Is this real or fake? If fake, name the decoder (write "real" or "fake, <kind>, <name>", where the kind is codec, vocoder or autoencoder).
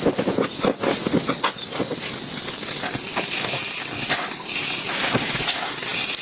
real